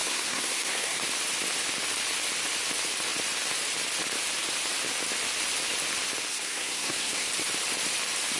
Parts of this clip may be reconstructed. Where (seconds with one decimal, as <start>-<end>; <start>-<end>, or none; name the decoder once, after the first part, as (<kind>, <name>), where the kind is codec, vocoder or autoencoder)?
0.0-1.0 (codec, SNAC); 6.3-7.3